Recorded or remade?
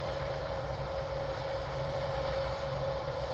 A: remade